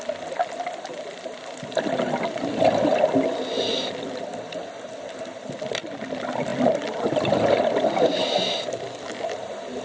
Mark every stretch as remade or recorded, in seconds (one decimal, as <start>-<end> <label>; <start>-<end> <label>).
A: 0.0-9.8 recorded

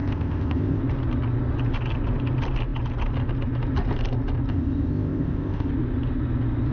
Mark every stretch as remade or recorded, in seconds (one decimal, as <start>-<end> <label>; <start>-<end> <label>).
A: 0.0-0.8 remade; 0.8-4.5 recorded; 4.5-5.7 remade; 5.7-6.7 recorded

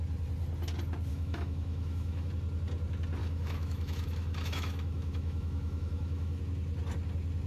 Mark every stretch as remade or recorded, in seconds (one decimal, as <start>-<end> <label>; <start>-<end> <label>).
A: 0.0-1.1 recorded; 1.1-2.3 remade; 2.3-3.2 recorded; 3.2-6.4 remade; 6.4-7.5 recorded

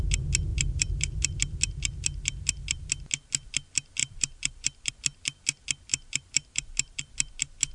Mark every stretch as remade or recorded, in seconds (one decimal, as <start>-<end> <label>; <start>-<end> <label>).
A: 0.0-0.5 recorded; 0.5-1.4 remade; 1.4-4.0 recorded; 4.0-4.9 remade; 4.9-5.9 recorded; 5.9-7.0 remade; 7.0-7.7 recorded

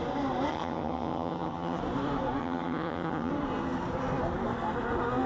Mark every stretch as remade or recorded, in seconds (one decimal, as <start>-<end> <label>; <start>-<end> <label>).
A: 0.0-0.5 recorded; 0.5-1.8 remade; 1.8-2.4 recorded; 2.4-3.3 remade; 3.3-5.3 recorded

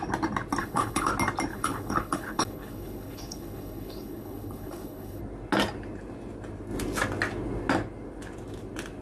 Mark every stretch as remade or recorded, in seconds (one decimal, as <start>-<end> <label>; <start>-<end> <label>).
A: 0.0-0.6 recorded; 0.6-1.1 remade; 1.1-1.5 recorded; 1.5-5.2 remade; 5.2-9.0 recorded

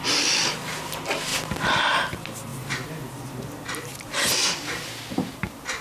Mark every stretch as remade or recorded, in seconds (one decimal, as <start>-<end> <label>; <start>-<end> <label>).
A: 0.0-2.5 recorded; 2.5-3.1 remade; 3.1-5.8 recorded